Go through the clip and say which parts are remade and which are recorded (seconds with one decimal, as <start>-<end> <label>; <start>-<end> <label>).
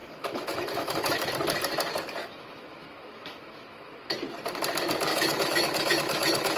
0.0-1.3 remade; 1.3-2.2 recorded; 2.2-4.0 remade; 4.0-5.1 recorded; 5.1-6.6 remade